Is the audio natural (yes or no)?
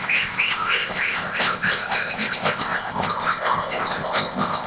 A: no